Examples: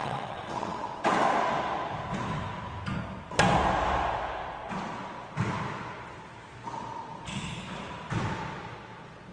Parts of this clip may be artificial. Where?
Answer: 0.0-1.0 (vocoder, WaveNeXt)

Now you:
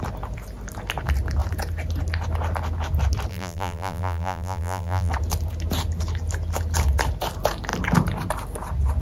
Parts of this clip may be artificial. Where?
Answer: 3.3-5.1 (vocoder, BigVGAN v2)

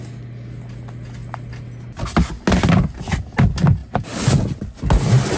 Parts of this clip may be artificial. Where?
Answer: none

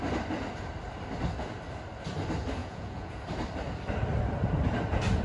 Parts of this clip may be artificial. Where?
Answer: 2.6-3.2 (vocoder, Vocos)

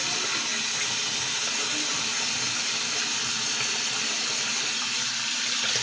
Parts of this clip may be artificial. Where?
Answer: none

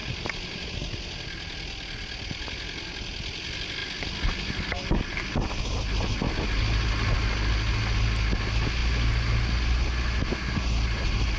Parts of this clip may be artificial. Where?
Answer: none